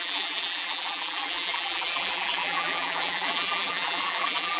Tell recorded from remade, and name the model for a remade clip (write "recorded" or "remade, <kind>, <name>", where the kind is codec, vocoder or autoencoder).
remade, vocoder, BigVGAN v2